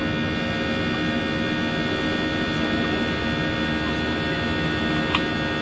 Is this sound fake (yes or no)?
no